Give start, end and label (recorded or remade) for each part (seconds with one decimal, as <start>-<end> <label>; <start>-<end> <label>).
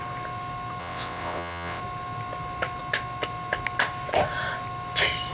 0.0-0.8 recorded; 0.8-1.8 remade; 1.8-5.3 recorded